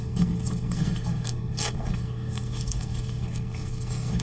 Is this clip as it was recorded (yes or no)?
no